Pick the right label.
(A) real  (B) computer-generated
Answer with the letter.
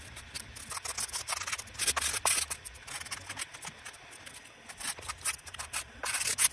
A